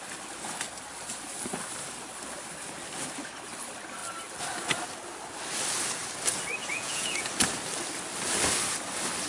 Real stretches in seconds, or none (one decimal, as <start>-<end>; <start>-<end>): 0.0-6.7; 7.3-9.3

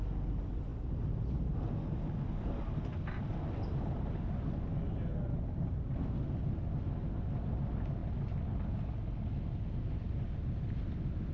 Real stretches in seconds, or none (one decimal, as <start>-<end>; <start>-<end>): 0.0-11.3

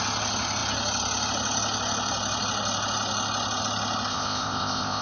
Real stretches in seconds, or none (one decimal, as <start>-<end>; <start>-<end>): 0.0-4.1

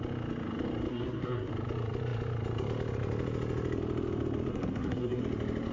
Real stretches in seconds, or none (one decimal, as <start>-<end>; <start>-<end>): 0.0-0.9; 1.5-4.5; 5.2-5.7